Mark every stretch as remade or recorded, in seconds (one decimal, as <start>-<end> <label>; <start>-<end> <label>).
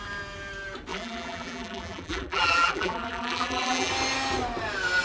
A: 0.0-0.9 recorded; 0.9-3.9 remade; 3.9-5.0 recorded